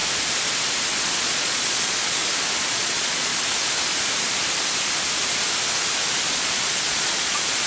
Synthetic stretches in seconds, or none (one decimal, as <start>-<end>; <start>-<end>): 1.0-2.2; 2.7-3.3; 6.3-7.7